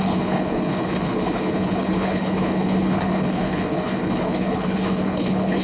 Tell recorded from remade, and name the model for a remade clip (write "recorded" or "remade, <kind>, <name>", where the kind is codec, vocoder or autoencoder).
remade, codec, HILCodec